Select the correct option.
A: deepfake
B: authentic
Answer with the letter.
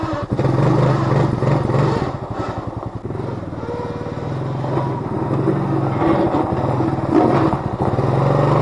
B